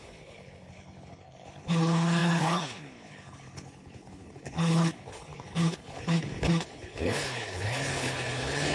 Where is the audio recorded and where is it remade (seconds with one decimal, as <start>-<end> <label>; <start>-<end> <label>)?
0.0-8.7 remade